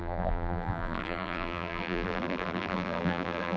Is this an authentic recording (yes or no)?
no